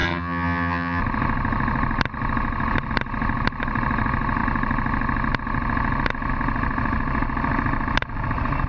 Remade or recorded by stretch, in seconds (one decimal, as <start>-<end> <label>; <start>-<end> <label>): 0.0-1.0 remade; 1.0-8.7 recorded